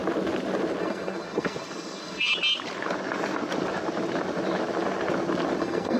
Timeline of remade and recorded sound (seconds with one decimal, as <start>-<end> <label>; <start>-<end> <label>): 0.0-0.8 recorded; 0.8-2.3 remade; 2.3-5.6 recorded; 5.6-6.0 remade